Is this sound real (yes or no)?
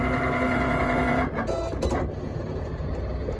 no